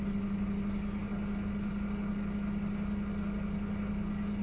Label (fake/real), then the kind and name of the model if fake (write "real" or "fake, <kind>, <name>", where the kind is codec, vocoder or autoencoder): real